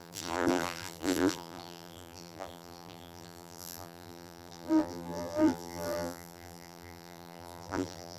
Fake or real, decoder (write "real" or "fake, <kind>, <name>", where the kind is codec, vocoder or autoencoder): fake, vocoder, BigVGAN v2